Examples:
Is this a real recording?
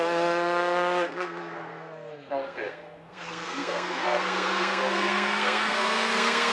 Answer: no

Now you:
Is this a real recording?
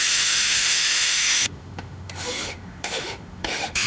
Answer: no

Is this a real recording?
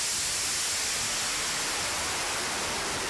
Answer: yes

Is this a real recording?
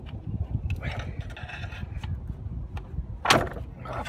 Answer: yes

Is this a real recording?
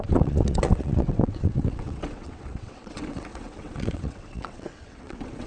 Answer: no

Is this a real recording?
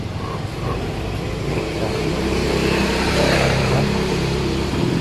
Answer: no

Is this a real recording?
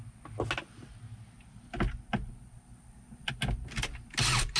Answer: yes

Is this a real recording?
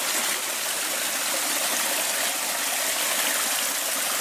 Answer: yes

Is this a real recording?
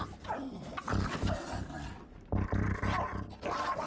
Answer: yes